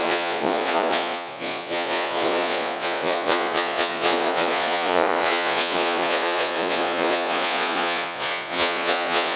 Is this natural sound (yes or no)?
no